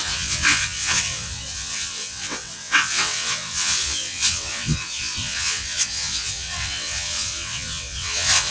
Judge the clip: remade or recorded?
remade